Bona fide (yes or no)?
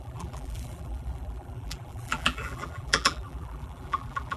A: no